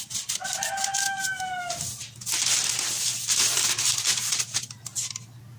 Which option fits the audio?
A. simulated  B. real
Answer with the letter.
B